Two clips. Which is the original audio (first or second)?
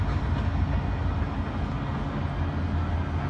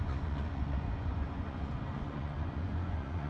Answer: first